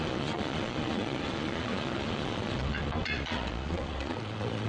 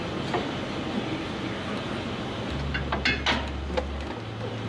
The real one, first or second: second